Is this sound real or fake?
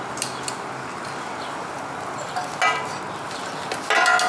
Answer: real